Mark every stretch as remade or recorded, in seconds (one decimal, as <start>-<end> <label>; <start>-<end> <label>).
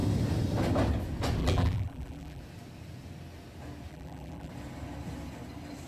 0.0-1.4 recorded; 1.4-2.4 remade; 2.4-3.9 recorded; 3.9-4.5 remade; 4.5-5.9 recorded